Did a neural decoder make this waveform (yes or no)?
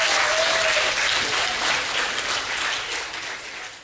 no